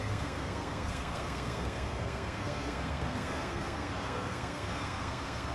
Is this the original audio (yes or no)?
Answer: no